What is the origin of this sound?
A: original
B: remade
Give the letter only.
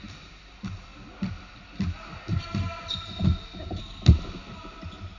A